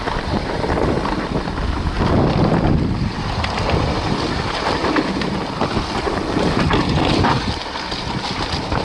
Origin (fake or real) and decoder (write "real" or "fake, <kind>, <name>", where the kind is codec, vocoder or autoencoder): real